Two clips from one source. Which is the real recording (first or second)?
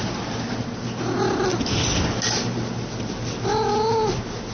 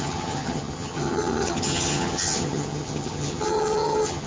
first